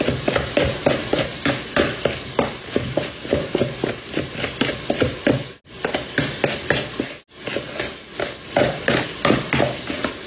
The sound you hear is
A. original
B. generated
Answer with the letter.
A